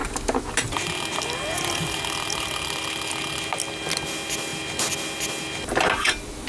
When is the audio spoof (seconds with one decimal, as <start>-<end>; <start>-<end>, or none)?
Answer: none